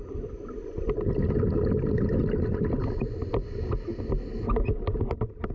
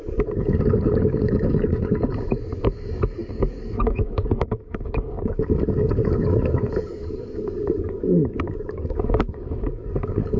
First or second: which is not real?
second